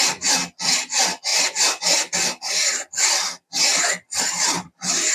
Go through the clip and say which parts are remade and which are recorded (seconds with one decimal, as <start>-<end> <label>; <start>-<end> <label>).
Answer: 0.0-5.1 recorded